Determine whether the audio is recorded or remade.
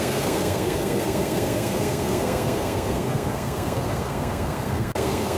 remade